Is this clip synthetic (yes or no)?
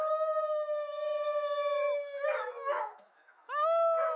yes